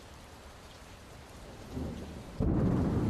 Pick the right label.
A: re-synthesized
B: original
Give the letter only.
A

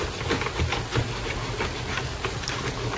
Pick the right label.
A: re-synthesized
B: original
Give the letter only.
B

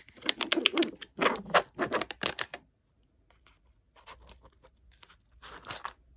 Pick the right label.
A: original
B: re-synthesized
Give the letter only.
A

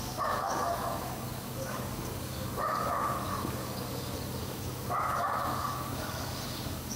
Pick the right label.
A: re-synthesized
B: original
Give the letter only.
A